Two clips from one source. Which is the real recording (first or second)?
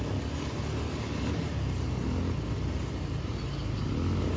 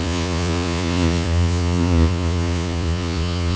first